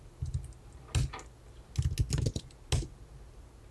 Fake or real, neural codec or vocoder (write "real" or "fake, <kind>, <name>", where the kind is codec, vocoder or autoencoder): real